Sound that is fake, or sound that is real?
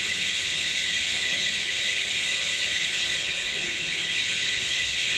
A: fake